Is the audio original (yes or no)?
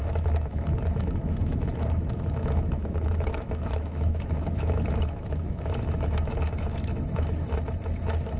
no